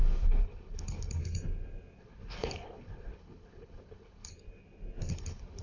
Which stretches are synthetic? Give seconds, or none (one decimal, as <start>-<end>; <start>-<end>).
0.0-1.2; 2.0-4.3; 5.1-5.6